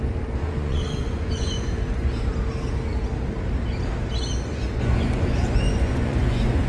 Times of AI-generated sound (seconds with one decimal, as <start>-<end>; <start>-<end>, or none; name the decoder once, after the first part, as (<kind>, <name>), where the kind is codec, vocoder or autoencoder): 0.4-2.3 (vocoder, Vocos); 4.5-6.7